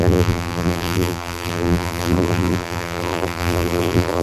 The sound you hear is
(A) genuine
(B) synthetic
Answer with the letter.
B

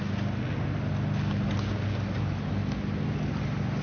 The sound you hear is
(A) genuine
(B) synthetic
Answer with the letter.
A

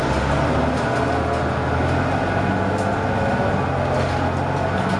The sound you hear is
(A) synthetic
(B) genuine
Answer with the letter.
B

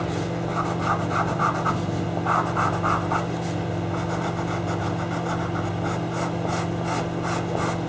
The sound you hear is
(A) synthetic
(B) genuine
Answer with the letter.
B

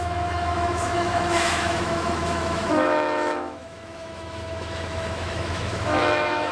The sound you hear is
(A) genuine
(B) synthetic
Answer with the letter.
B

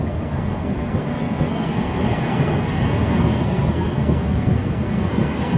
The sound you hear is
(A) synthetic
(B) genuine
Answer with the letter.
A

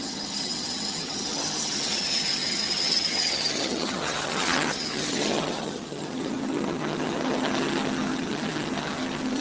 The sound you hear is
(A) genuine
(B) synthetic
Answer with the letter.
B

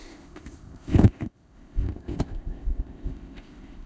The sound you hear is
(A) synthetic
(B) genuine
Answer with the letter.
A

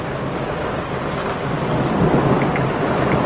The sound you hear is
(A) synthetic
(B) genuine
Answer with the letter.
B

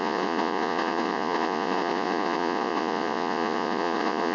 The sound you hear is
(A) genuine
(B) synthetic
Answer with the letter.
B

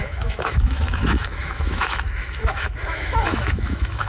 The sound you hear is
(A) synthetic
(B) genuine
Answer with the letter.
A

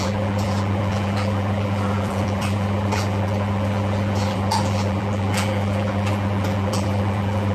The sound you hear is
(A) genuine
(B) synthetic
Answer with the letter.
B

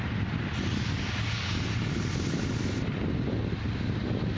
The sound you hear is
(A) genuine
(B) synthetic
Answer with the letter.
A